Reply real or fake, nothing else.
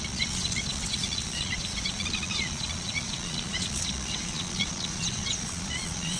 fake